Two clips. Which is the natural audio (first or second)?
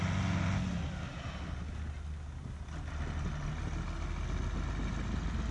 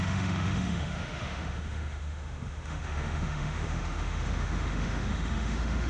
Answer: first